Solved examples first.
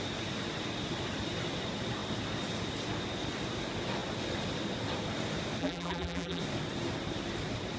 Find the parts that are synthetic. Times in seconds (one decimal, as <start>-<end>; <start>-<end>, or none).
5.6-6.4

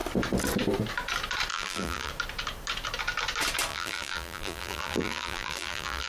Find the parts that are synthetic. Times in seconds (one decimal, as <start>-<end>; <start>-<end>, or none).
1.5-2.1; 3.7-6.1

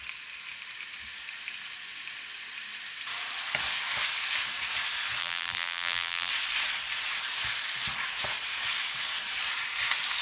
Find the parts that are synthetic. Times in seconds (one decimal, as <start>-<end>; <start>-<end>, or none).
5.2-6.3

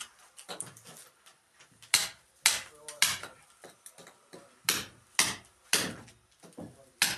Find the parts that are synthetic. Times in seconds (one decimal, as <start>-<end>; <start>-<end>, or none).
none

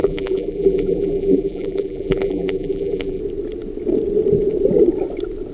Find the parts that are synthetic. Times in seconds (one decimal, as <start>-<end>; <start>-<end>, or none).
0.0-3.2

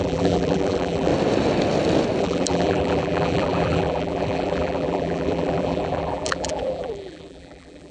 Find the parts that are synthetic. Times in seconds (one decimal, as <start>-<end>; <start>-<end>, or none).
0.0-1.1; 2.2-7.9

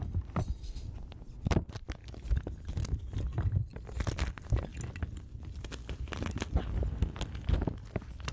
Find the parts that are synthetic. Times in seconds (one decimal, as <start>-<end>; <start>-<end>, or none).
0.0-2.0; 3.2-3.7; 4.3-4.7; 7.9-8.3

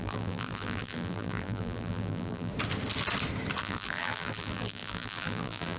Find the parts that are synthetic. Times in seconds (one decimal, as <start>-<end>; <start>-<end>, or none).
0.0-2.5; 3.6-5.8